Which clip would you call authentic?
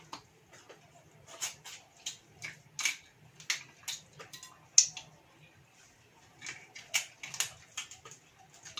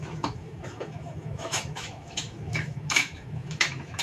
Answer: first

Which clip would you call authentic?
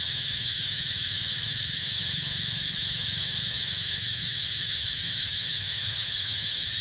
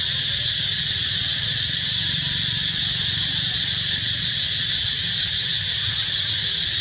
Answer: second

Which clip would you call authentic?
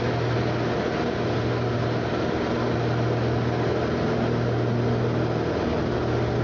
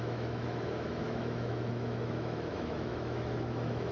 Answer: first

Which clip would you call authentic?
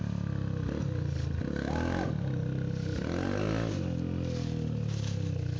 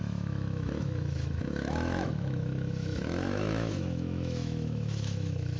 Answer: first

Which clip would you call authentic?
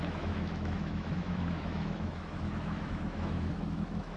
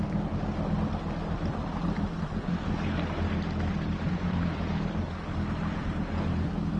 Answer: second